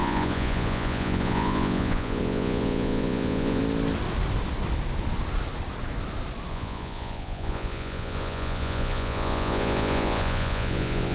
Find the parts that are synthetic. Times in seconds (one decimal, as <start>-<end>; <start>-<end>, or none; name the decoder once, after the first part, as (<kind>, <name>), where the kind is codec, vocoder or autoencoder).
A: 0.0-3.6 (vocoder, Vocos); 6.5-11.1